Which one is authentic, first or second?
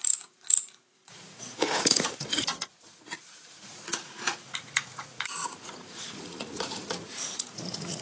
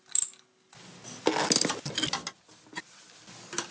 second